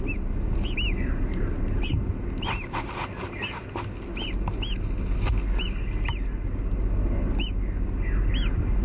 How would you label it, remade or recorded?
recorded